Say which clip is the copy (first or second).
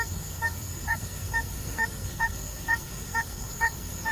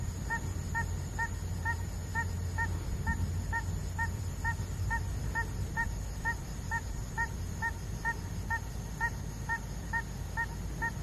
first